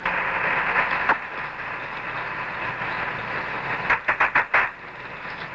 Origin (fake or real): real